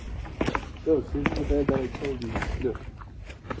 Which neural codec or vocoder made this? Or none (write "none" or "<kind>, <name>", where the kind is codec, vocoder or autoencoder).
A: none